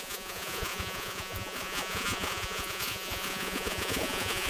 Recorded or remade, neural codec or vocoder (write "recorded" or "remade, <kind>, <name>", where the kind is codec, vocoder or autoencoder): remade, vocoder, Vocos